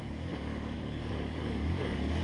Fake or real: fake